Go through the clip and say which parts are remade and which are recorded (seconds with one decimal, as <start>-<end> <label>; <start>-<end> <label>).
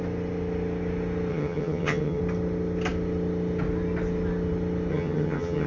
0.0-1.3 recorded; 1.3-2.2 remade; 2.2-4.9 recorded; 4.9-5.7 remade